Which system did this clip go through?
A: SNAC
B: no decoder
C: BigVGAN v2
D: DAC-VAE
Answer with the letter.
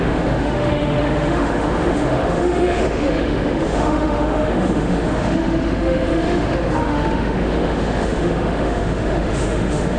D